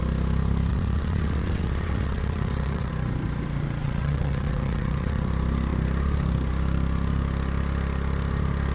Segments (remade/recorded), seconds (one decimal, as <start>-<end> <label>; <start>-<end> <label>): 0.0-0.7 recorded; 0.7-2.9 remade; 2.9-3.8 recorded; 3.8-5.3 remade; 5.3-8.7 recorded